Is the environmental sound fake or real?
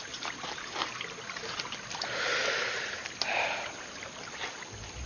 real